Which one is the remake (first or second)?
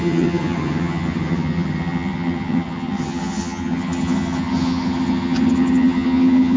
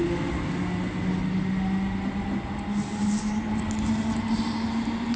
first